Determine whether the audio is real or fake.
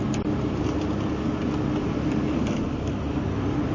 real